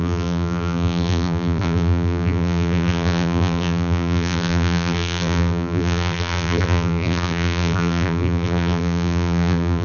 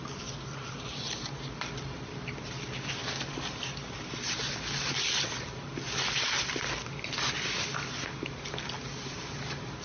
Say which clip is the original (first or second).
second